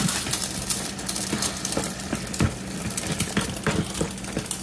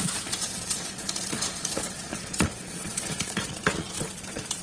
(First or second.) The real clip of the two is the first